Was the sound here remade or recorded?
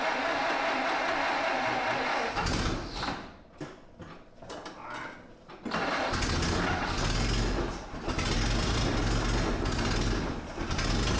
recorded